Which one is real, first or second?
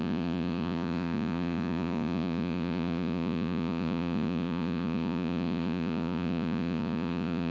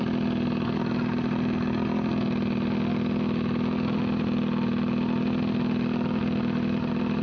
second